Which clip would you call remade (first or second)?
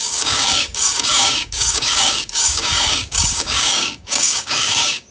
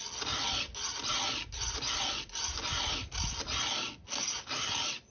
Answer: first